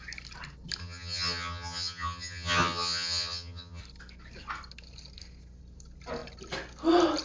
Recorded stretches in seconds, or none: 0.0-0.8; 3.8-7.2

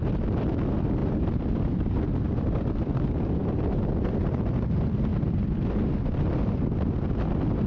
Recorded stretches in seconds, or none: 0.0-7.7

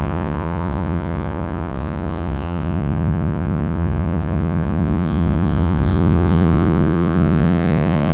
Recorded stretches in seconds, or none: none

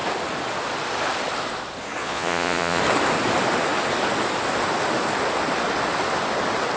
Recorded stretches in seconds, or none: 0.0-2.0; 2.8-6.8

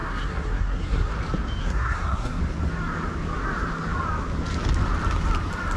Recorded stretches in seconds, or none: 1.1-1.6; 2.4-5.8